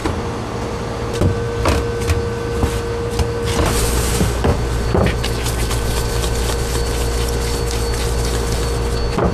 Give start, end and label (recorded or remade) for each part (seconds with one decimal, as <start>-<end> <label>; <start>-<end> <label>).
0.0-9.3 recorded